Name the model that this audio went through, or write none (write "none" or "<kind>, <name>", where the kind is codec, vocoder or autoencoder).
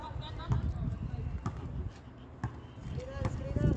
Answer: none